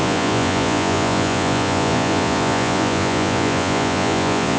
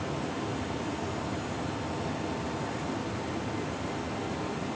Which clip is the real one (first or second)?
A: second